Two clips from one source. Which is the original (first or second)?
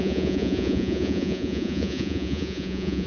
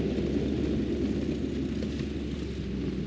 second